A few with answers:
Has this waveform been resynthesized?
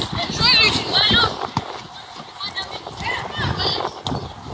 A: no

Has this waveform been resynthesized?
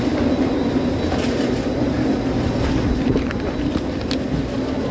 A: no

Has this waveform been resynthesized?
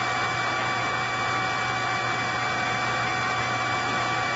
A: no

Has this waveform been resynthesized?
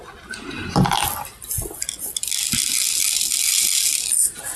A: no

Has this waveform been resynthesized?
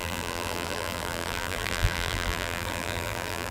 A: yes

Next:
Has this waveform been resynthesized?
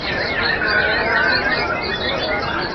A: no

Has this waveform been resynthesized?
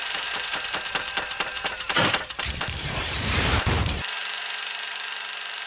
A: yes